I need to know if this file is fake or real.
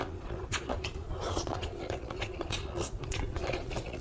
fake